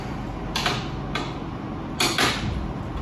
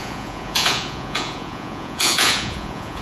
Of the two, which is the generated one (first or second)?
second